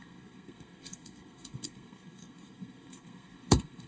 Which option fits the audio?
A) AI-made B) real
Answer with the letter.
A